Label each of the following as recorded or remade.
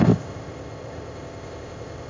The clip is remade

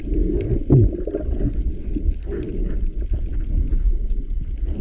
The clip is recorded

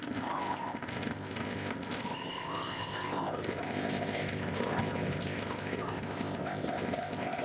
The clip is remade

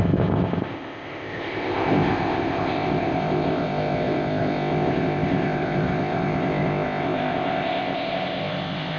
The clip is remade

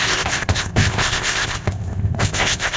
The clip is remade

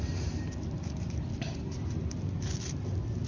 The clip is recorded